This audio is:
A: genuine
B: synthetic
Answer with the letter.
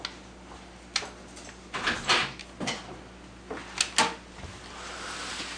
A